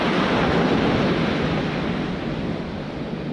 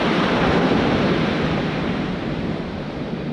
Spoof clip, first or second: second